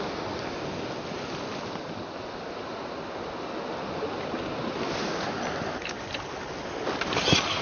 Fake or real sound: real